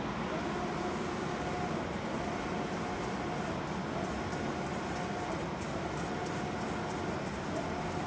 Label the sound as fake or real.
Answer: real